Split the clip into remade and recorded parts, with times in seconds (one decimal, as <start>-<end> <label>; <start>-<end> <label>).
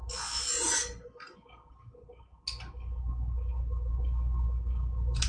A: 0.0-5.3 recorded